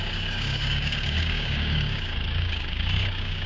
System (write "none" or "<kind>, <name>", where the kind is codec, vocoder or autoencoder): codec, DAC